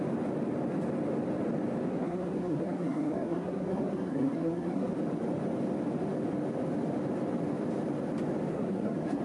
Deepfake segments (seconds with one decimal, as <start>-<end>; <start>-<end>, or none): 1.9-4.9; 8.5-9.2